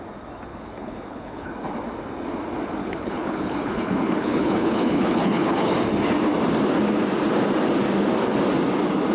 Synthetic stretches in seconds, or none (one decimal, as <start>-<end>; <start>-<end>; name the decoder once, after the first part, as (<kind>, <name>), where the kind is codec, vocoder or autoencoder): 0.5-1.5 (codec, HILCodec); 2.8-5.7